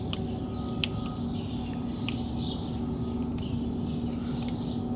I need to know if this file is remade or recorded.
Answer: recorded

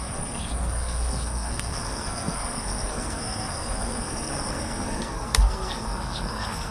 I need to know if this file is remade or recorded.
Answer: remade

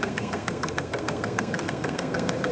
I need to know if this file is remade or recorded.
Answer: remade